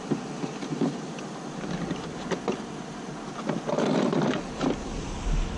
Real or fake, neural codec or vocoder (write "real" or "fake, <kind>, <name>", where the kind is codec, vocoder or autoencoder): real